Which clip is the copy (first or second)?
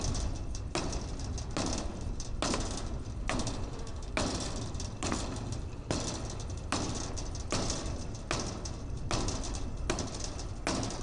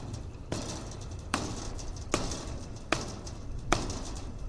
second